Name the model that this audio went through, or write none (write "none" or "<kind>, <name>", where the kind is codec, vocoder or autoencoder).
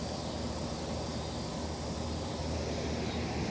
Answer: none